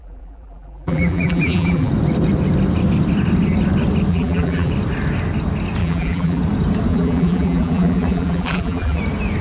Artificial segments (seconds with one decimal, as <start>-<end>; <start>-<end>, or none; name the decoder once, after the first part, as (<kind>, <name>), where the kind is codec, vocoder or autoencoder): 0.0-1.9 (vocoder, BigVGAN v2); 4.1-4.7; 5.8-6.4; 6.9-9.0